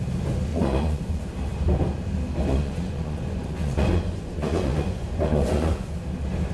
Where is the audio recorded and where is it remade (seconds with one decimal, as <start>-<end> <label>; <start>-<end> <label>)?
0.0-0.5 recorded; 0.5-1.2 remade; 1.2-2.5 recorded; 2.5-5.9 remade; 5.9-6.5 recorded